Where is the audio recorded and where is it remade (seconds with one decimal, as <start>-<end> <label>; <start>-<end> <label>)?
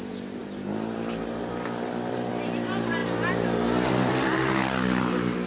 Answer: 0.0-5.5 remade